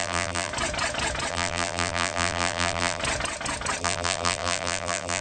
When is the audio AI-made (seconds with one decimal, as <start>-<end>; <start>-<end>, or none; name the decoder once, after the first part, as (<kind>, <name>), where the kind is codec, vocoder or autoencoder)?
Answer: 0.0-0.5 (vocoder, BigVGAN v2); 1.3-3.0; 3.8-5.2